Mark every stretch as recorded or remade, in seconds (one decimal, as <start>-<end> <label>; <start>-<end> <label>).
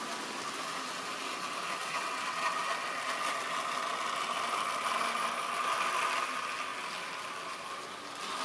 0.0-1.8 recorded; 1.8-2.5 remade; 2.5-8.4 recorded